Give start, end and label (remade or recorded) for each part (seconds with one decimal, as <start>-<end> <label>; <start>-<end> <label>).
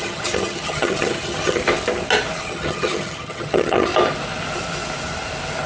0.0-1.6 remade; 1.6-2.4 recorded; 2.4-3.9 remade; 3.9-5.7 recorded